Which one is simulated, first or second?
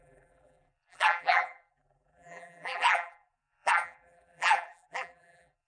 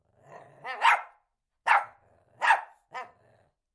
first